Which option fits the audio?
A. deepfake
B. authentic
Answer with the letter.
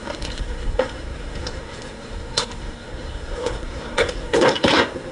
A